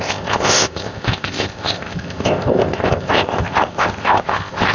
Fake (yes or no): yes